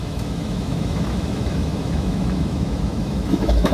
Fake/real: fake